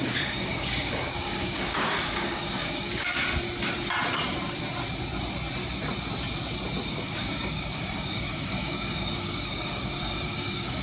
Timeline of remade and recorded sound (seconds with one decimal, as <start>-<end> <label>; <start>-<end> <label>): 0.0-3.2 remade; 3.2-6.9 recorded; 6.9-10.8 remade